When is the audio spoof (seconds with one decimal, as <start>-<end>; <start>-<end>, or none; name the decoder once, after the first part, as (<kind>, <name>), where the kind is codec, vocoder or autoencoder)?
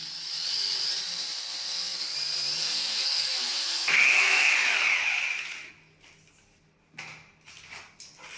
2.6-4.5 (codec, SNAC)